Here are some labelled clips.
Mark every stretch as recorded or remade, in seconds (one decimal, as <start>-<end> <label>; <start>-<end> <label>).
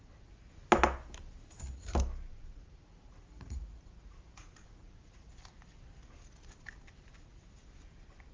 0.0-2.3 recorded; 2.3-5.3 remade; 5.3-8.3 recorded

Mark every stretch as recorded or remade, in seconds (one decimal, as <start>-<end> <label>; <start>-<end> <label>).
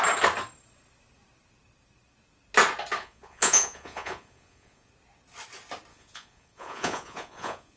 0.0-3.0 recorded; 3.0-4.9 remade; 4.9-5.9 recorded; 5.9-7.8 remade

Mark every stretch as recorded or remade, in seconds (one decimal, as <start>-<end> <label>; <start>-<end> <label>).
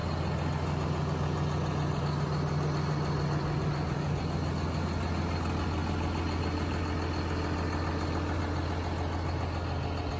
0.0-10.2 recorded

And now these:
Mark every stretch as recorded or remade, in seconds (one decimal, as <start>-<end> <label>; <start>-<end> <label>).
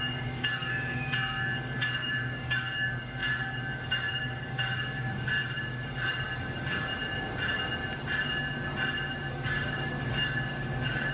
0.0-6.9 remade; 6.9-9.3 recorded; 9.3-11.1 remade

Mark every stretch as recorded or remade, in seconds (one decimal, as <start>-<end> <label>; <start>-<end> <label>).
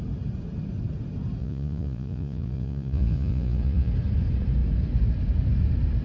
0.0-1.4 recorded; 1.4-3.9 remade; 3.9-6.0 recorded